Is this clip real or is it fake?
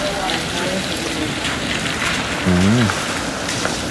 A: real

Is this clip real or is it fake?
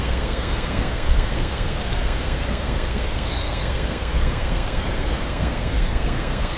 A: fake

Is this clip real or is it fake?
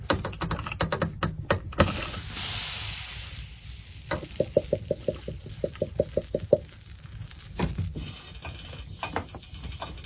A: real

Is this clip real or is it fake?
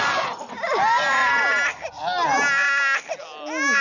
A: real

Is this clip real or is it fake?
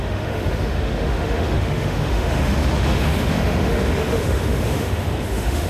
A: fake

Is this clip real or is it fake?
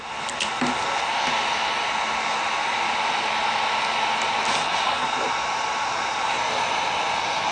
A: real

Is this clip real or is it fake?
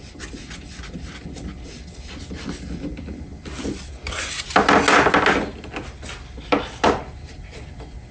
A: real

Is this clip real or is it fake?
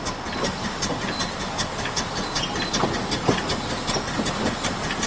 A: real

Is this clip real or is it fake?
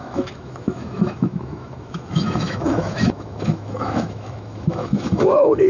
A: fake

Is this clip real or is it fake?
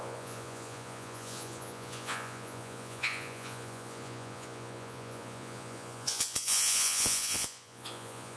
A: fake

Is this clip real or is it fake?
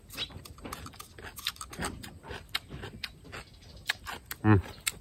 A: real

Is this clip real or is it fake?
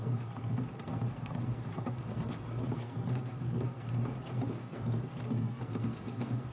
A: fake